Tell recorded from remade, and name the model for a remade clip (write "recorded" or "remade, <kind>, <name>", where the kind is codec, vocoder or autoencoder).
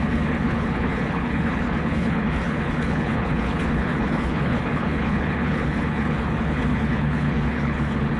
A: remade, codec, HILCodec